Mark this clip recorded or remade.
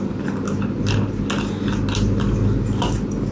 recorded